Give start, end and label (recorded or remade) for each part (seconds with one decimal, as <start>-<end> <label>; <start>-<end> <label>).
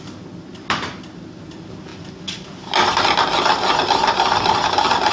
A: 0.0-5.1 recorded